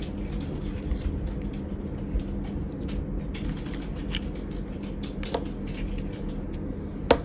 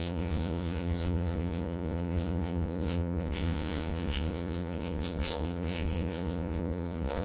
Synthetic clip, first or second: second